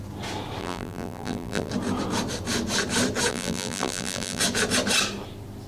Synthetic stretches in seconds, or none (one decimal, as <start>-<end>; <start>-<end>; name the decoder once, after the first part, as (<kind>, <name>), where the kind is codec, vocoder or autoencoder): 0.6-1.7 (vocoder, BigVGAN v2); 3.3-4.4